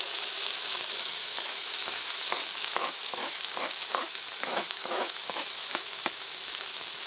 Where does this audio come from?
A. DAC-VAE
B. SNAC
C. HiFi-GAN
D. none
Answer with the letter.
A